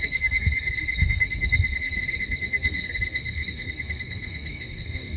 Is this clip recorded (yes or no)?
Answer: no